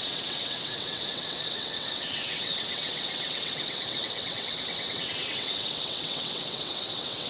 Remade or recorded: remade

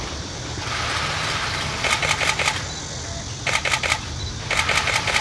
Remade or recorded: recorded